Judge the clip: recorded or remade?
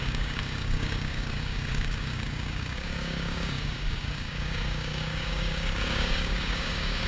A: remade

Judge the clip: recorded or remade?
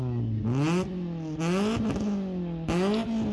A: recorded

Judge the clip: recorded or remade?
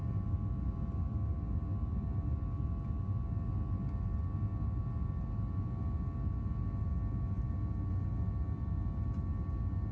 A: recorded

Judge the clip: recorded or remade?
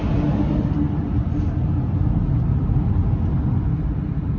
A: recorded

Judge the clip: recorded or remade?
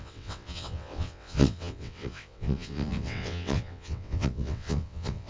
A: remade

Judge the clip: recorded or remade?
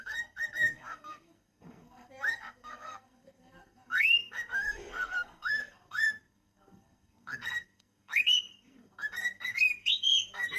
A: remade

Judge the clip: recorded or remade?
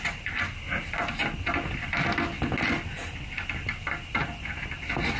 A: recorded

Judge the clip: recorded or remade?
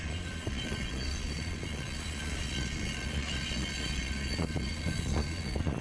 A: remade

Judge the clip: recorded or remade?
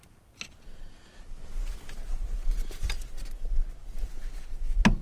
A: recorded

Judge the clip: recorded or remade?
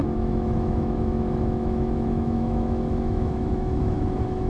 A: remade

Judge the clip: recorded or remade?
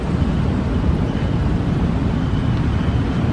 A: recorded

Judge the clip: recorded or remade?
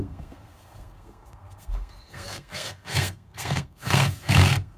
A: remade